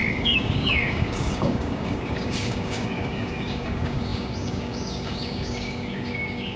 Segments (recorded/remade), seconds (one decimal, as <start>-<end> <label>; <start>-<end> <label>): 0.0-6.6 remade